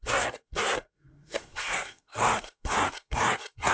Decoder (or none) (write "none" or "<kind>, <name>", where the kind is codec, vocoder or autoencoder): codec, SNAC